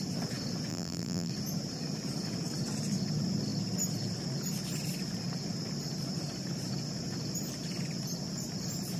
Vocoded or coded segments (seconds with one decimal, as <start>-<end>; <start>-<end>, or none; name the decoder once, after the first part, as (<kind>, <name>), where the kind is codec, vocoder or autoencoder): 0.7-1.3 (vocoder, BigVGAN v2)

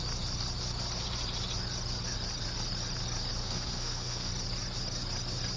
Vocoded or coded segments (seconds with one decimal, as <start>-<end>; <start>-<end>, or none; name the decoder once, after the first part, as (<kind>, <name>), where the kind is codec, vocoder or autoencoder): 3.4-4.3 (codec, SNAC)

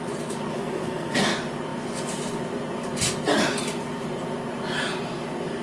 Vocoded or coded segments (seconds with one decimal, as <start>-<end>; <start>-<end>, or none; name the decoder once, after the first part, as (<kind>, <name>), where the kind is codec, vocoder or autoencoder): 0.5-1.2 (codec, SNAC)

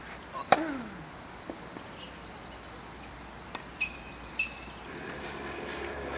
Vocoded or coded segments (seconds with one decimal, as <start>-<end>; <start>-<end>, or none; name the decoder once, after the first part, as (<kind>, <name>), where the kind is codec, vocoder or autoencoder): none

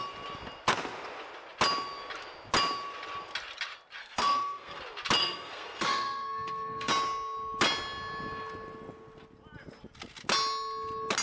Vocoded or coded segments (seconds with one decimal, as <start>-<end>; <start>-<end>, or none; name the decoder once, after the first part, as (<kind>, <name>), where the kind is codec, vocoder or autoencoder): 4.0-4.8 (codec, SNAC); 5.2-6.9

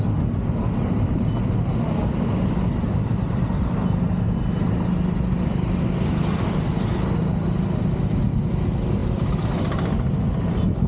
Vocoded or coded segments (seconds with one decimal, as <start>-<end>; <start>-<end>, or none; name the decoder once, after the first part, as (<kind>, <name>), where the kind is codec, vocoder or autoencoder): none

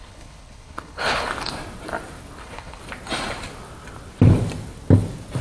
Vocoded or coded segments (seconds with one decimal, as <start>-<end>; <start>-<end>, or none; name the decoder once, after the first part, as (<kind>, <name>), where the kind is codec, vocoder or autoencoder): 0.0-1.3 (codec, HILCodec); 2.4-2.8